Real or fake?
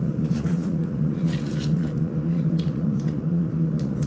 fake